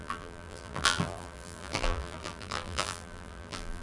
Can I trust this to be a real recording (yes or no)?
no